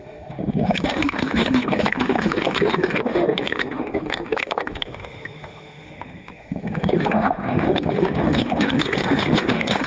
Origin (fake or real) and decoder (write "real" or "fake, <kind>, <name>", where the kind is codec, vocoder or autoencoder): fake, autoencoder, DAC-VAE